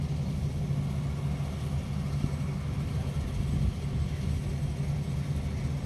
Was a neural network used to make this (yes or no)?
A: no